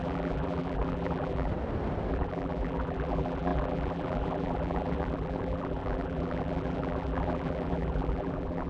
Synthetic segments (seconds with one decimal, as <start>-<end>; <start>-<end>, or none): 0.0-1.5; 2.1-8.7

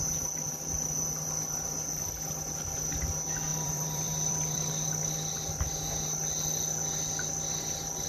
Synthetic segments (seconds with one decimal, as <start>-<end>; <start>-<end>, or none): 3.5-4.7

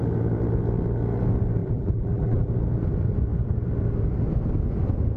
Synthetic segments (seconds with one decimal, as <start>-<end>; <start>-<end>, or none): 1.6-2.5

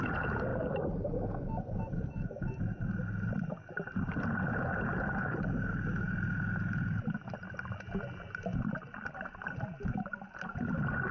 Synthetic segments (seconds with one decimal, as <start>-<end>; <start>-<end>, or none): none

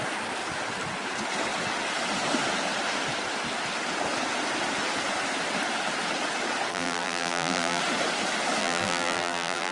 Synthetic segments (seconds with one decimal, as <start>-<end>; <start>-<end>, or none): 6.7-7.8; 8.6-9.7